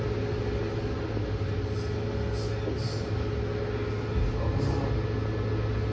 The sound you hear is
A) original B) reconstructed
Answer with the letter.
A